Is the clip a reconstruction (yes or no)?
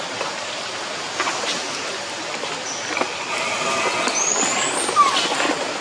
no